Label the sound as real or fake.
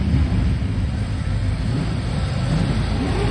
real